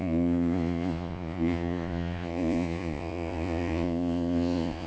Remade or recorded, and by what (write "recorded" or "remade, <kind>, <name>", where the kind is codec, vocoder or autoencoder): remade, vocoder, Vocos